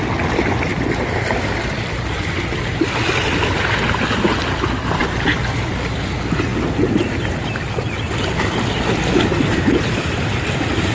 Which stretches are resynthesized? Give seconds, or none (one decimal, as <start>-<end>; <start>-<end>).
none